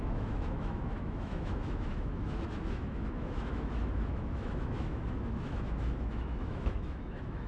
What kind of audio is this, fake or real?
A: fake